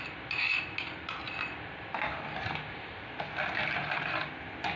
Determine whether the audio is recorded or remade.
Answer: recorded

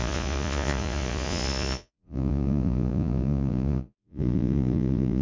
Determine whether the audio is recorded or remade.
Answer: remade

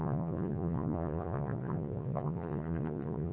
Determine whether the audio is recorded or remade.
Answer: remade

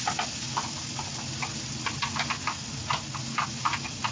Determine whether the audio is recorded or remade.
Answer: recorded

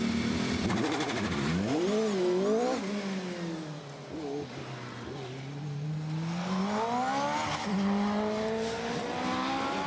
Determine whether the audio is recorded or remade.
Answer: recorded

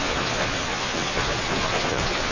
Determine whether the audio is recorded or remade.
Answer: remade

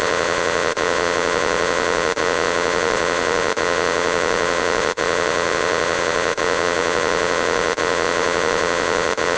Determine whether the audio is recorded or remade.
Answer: remade